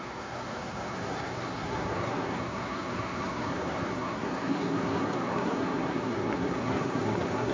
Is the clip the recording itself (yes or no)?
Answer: no